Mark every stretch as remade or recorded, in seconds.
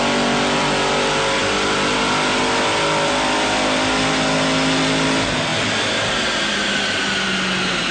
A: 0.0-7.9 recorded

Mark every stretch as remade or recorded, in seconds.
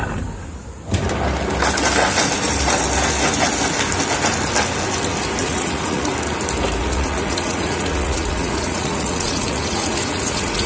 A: 0.0-5.4 recorded; 5.4-6.1 remade; 6.1-6.8 recorded; 6.8-10.7 remade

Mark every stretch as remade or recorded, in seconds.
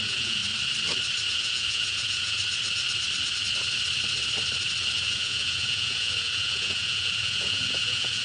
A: 0.0-0.4 remade; 0.4-1.3 recorded; 1.3-2.4 remade; 2.4-4.9 recorded; 4.9-8.2 remade